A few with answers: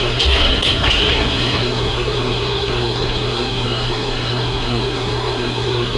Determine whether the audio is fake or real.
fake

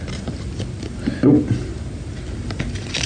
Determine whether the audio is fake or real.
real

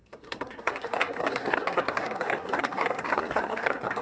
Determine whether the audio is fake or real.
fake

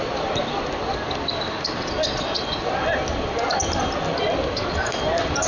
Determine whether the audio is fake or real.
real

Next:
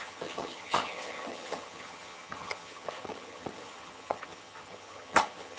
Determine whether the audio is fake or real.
fake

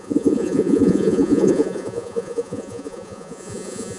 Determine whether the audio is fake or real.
fake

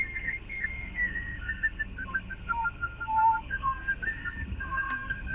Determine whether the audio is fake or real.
fake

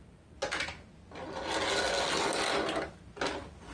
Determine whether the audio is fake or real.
real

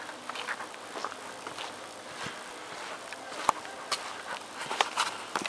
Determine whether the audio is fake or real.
real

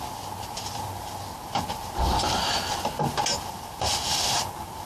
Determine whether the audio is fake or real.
real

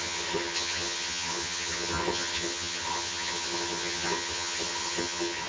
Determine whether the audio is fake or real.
fake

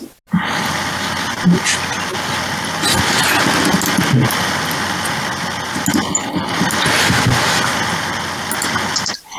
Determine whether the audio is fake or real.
real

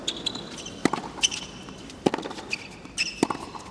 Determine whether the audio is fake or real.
real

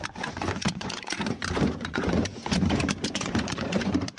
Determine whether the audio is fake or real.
fake